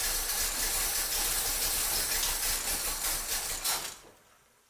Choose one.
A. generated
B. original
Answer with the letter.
B